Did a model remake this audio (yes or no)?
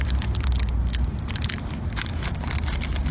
no